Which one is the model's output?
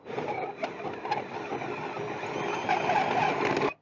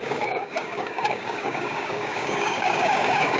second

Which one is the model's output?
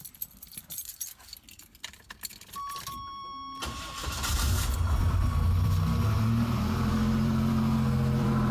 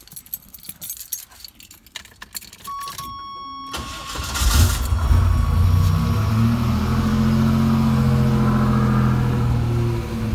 first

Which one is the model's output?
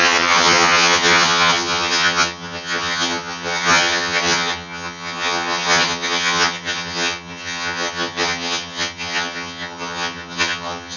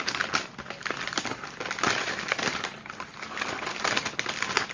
first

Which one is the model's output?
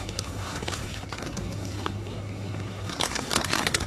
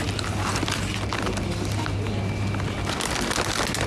first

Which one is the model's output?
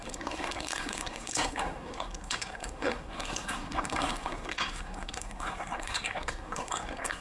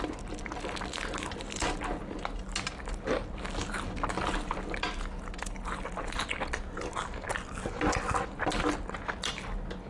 first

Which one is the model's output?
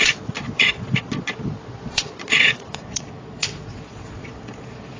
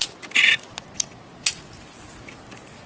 first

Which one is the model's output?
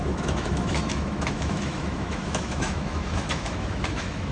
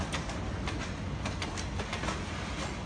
first